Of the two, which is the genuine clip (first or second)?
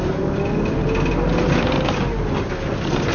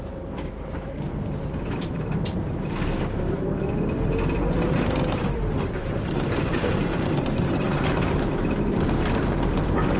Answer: first